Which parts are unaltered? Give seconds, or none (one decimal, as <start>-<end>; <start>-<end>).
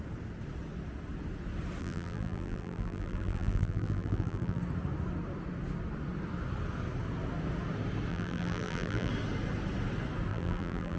0.0-1.8; 4.6-8.1; 9.1-10.3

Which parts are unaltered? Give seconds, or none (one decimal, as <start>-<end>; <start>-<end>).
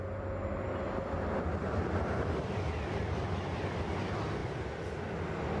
0.0-1.5; 2.3-5.6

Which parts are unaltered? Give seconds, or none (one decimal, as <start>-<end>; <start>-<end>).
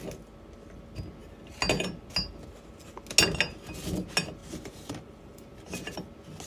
0.0-4.4; 5.5-6.5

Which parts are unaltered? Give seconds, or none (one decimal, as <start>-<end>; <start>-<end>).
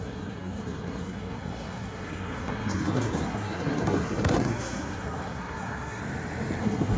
6.0-6.6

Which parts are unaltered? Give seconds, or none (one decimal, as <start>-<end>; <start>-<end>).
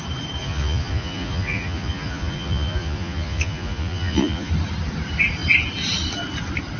0.0-0.4; 4.5-6.8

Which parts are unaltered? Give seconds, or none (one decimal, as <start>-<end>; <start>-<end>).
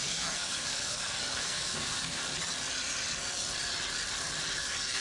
2.2-4.6